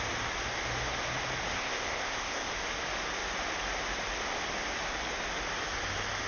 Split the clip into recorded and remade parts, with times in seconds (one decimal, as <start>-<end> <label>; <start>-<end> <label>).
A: 0.0-1.5 recorded; 1.5-2.5 remade; 2.5-6.3 recorded